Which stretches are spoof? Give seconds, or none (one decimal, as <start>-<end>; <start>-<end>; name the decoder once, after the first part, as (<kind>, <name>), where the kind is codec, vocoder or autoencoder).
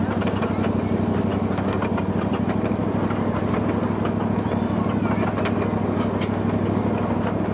none